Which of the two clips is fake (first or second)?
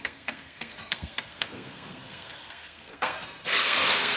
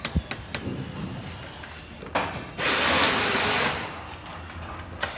first